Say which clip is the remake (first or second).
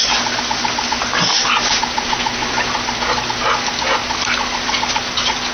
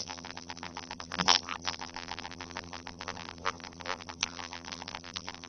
second